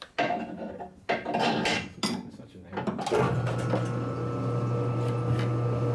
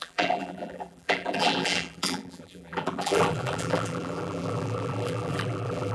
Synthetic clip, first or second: second